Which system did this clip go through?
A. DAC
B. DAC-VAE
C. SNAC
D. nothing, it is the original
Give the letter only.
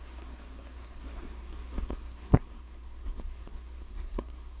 C